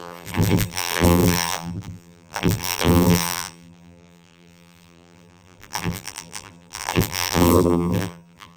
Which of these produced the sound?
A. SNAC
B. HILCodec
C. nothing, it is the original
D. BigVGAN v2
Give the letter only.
D